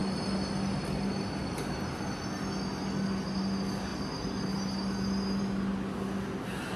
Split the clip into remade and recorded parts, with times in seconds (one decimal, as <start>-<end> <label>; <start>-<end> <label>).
0.0-6.8 recorded